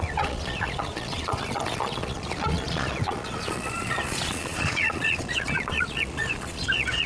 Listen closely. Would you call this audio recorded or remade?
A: remade